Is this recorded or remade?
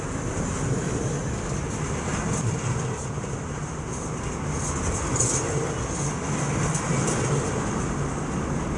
recorded